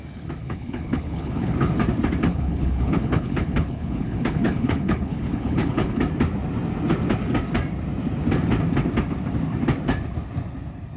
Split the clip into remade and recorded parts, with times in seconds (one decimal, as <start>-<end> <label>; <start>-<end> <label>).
0.0-0.4 recorded; 0.4-1.7 remade; 1.7-2.3 recorded; 2.3-6.0 remade; 6.0-11.0 recorded